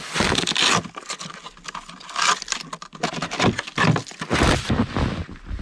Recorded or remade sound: recorded